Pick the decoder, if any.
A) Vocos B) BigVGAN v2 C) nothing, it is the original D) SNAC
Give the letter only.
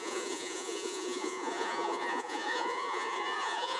A